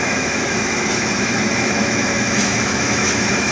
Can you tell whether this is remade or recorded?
remade